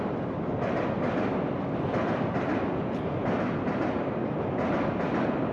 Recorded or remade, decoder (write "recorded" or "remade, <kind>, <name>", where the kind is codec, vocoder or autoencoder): recorded